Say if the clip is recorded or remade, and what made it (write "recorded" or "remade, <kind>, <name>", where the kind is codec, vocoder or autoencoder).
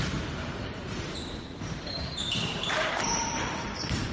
remade, vocoder, BigVGAN v2